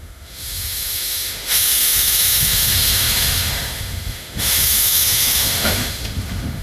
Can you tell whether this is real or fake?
fake